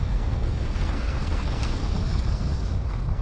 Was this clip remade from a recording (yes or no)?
yes